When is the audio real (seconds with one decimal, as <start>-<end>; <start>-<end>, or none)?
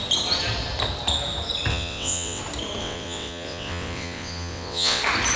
0.0-1.7; 2.4-2.8; 5.0-5.4